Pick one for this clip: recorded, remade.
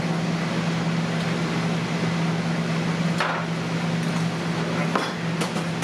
recorded